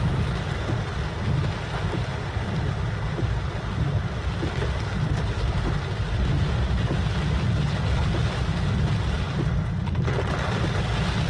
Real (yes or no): yes